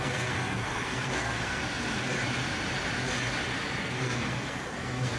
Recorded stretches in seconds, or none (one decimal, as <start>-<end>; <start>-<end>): 1.6-3.8